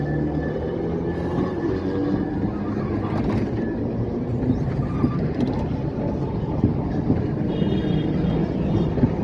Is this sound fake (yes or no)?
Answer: no